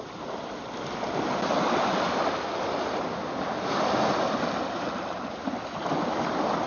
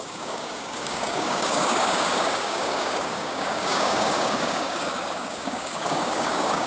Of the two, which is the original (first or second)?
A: first